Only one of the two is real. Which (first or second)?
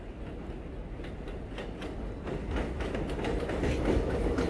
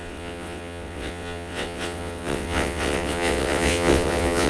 first